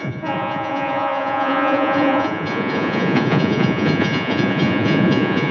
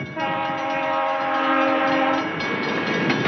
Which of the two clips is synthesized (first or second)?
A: first